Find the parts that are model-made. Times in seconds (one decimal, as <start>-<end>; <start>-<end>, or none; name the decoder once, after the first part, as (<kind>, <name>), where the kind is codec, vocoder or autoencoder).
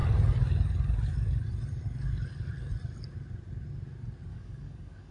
4.3-5.1 (codec, DAC)